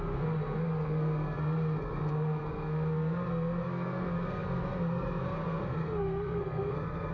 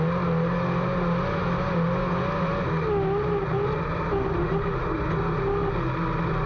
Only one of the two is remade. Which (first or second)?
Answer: first